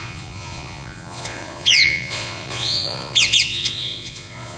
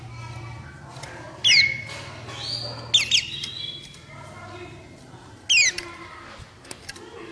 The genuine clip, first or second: second